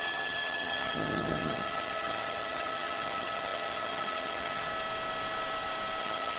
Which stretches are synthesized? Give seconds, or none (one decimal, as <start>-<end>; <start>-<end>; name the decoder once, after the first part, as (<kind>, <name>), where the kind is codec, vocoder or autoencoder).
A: 0.0-4.7 (vocoder, HiFi-GAN); 6.0-6.4